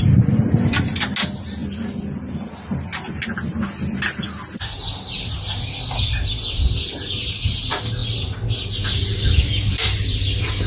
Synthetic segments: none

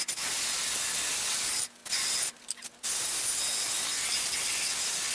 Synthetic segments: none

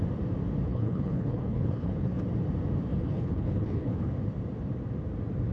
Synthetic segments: 0.7-2.2 (codec, HILCodec); 2.9-4.1

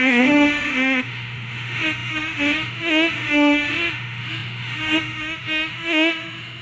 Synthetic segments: 0.0-6.6 (autoencoder, DAC-VAE)